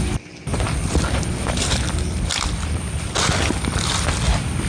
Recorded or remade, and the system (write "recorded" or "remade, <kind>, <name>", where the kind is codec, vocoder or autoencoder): recorded